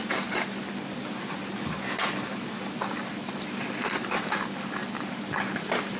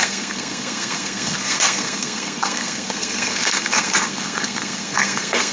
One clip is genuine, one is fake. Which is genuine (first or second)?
first